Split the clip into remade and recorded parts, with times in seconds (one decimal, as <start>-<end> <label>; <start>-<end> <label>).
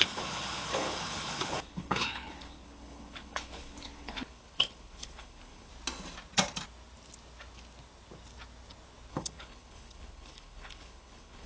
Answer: 0.0-5.7 remade; 5.7-9.1 recorded; 9.1-11.5 remade